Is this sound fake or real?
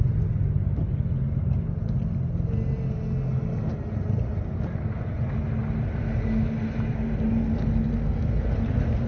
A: real